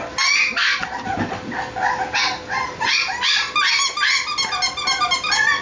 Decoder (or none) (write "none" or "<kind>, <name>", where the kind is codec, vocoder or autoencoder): none